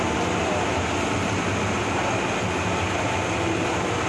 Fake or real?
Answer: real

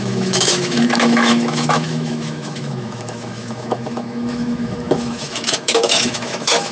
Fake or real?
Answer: fake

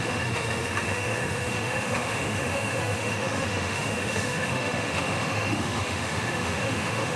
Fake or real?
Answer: fake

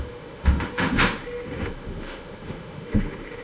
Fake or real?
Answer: fake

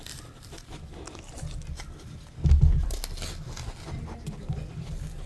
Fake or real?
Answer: real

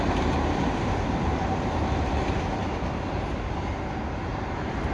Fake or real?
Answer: real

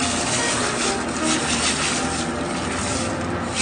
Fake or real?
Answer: real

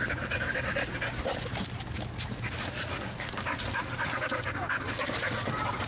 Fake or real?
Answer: real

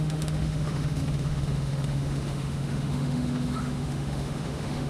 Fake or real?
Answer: fake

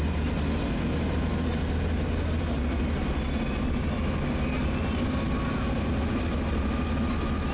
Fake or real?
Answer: real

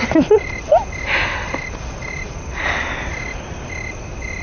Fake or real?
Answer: real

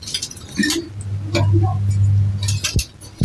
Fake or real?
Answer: real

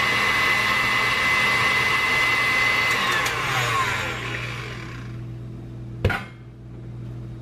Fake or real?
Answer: real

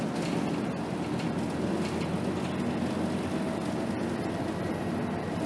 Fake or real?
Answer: real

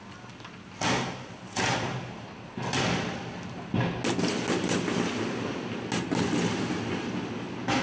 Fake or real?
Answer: real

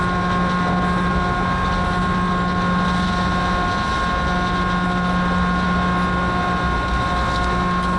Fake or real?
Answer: real